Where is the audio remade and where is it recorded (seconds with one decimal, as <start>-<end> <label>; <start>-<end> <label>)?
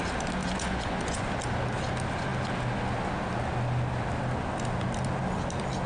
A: 0.0-0.4 recorded; 0.4-1.3 remade; 1.3-5.9 recorded